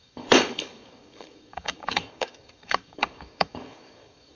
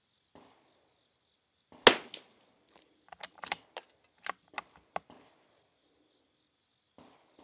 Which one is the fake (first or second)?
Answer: first